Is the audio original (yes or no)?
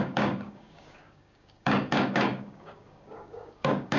no